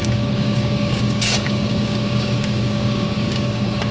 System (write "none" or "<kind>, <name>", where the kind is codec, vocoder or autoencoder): codec, DAC